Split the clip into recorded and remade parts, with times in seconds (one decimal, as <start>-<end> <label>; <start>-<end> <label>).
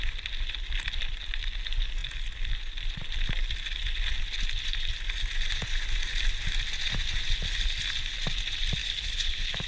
0.0-8.8 recorded; 8.8-9.7 remade